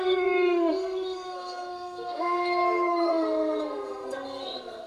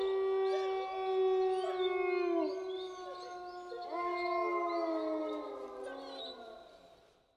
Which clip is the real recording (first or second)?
second